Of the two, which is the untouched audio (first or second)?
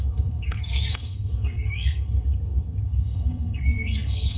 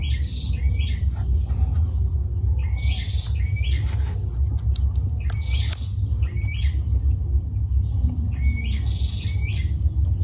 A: second